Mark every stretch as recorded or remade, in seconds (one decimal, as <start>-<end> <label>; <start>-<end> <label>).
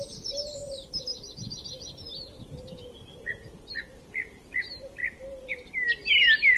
0.0-0.6 remade; 0.6-3.8 recorded; 3.8-5.0 remade; 5.0-6.6 recorded